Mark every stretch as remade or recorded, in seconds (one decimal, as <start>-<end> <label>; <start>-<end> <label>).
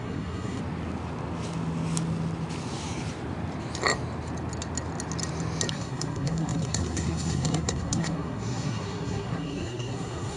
0.0-0.6 remade; 0.6-5.7 recorded; 5.7-10.4 remade